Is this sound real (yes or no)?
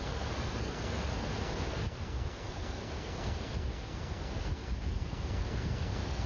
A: no